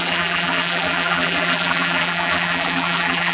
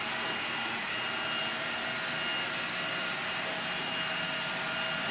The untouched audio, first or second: second